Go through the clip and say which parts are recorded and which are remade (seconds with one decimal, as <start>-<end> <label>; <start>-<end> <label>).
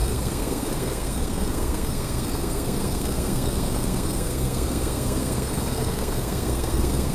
0.0-7.1 remade